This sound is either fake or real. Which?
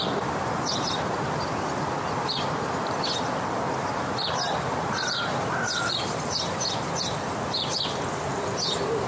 real